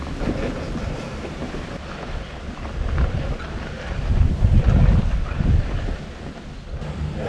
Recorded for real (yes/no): yes